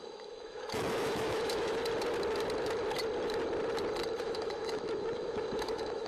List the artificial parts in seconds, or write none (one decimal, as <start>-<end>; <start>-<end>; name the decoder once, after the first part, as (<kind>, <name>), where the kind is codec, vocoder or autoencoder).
0.0-1.8 (autoencoder, DAC-VAE); 4.2-6.1